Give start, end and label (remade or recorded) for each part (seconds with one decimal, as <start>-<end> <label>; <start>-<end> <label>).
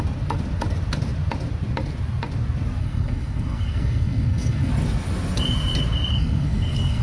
0.0-2.8 recorded; 2.8-4.7 remade; 4.7-6.1 recorded; 6.1-7.0 remade